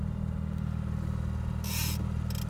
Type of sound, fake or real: real